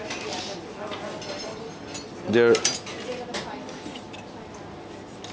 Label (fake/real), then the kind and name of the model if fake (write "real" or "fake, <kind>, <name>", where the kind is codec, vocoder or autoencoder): real